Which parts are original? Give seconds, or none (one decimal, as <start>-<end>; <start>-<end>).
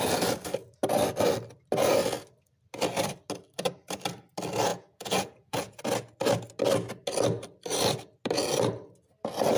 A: 0.0-4.7; 5.8-9.6